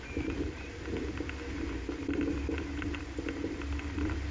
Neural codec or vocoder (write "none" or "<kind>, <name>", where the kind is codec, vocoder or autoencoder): none